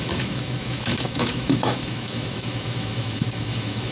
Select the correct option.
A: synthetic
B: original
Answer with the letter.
A